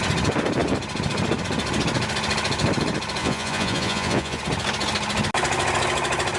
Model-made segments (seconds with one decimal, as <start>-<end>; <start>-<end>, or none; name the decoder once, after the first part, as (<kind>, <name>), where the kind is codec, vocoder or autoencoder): 3.2-4.4 (vocoder, Vocos)